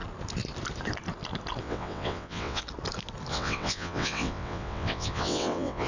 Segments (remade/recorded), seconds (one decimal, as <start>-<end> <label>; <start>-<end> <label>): 0.0-1.6 recorded; 1.6-2.6 remade; 2.6-3.3 recorded; 3.3-5.9 remade